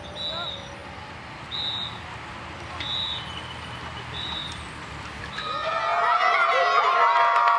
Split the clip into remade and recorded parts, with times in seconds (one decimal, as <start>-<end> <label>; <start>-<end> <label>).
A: 0.0-7.6 recorded